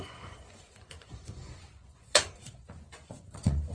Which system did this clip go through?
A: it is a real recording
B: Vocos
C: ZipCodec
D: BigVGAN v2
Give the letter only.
B